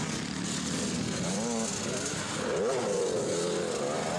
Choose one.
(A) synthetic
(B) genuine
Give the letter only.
B